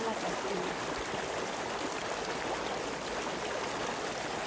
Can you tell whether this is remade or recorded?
recorded